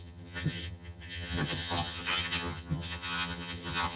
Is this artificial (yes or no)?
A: yes